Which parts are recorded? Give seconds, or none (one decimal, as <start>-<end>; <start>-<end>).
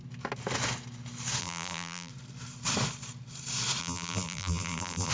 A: 0.0-1.4; 2.1-3.8